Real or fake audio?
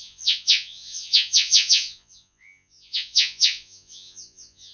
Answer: fake